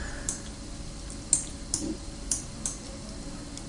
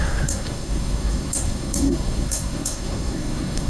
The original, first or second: first